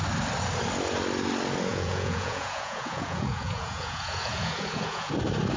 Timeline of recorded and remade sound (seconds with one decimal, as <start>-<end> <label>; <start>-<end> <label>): 0.0-1.7 recorded; 1.7-5.1 remade; 5.1-5.6 recorded